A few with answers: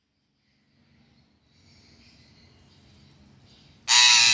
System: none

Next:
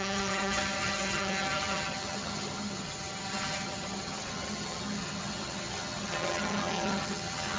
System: vocoder, HiFi-GAN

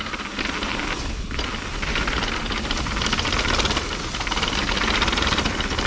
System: none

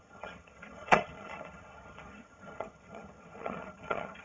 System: vocoder, HiFi-GAN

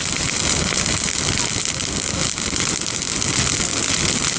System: none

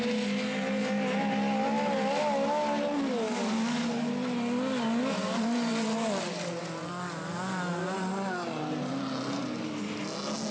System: none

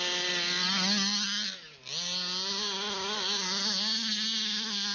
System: none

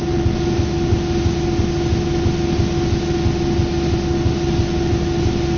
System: none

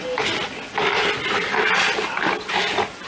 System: none